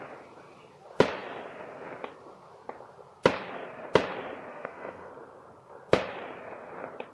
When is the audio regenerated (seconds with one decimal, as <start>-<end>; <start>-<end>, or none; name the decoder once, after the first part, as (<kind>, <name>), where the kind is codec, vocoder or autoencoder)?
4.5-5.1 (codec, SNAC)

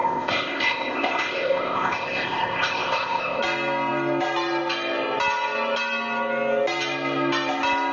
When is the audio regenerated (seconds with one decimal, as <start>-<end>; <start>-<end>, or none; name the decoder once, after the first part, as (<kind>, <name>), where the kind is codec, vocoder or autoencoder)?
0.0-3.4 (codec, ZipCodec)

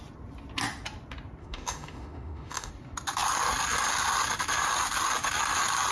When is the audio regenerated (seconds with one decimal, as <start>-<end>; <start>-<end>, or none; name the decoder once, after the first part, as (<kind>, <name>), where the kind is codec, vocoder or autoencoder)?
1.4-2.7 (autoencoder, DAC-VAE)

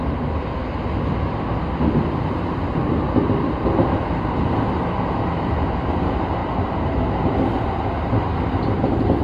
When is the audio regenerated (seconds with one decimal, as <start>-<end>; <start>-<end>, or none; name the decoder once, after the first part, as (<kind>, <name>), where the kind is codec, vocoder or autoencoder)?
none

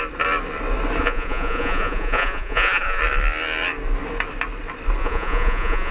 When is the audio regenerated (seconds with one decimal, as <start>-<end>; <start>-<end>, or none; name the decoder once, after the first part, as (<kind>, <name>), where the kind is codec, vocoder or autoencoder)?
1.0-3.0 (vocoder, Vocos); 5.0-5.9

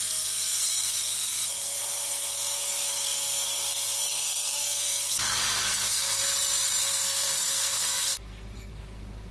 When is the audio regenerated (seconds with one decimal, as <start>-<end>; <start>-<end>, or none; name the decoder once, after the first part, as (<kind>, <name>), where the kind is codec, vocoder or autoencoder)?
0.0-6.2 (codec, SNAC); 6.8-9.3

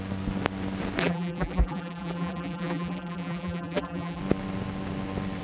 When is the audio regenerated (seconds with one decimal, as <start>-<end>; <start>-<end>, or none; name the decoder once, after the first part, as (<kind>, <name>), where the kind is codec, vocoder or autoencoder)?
1.0-4.2 (vocoder, BigVGAN v2)

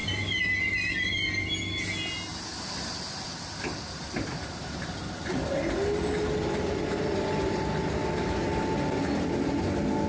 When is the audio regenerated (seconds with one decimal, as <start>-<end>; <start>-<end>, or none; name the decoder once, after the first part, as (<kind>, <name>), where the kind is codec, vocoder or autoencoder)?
none